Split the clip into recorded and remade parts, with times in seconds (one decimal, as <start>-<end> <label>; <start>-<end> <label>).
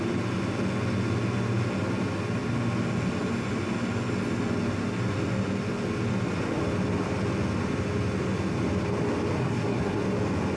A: 0.0-9.4 recorded; 9.4-10.0 remade; 10.0-10.6 recorded